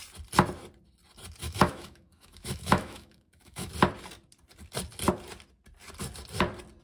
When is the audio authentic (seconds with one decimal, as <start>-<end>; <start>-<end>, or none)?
0.0-1.4; 3.7-6.8